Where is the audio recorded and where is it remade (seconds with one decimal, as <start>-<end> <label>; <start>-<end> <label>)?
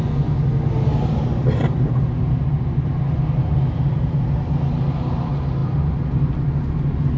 0.0-7.2 recorded